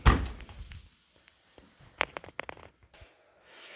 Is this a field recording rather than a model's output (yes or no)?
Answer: yes